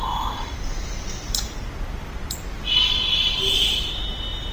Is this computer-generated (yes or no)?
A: no